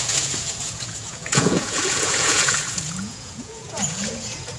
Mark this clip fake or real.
fake